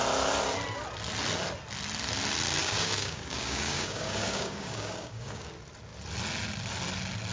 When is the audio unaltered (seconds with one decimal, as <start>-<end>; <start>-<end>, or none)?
0.0-2.6; 5.5-7.3